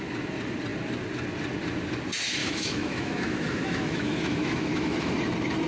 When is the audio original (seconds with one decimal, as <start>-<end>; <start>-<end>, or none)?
0.0-2.4; 5.1-5.7

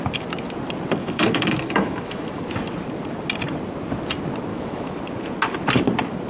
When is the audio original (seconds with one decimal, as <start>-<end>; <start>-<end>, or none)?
0.0-1.0; 2.4-4.5; 5.0-6.3

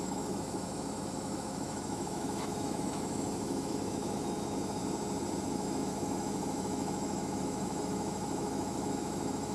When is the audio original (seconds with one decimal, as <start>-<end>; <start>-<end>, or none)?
4.8-5.4

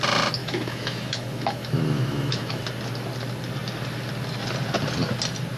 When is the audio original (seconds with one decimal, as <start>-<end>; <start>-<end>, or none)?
0.0-0.4; 2.6-5.6

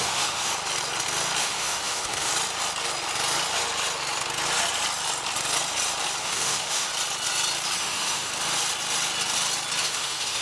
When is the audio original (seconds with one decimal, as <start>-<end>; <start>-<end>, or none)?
0.5-1.4; 2.3-6.2; 6.9-7.8; 8.3-9.8